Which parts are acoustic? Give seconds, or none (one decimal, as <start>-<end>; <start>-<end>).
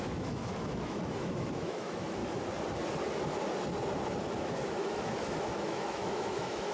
2.2-4.4